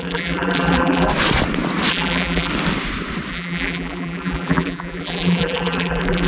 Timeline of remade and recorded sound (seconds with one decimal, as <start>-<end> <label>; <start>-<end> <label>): 0.0-1.1 remade; 1.1-1.9 recorded; 1.9-2.5 remade; 2.5-3.3 recorded; 3.3-6.3 remade